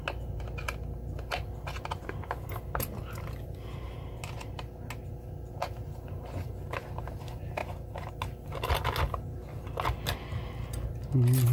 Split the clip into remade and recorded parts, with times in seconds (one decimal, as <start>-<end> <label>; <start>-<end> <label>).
0.0-11.5 recorded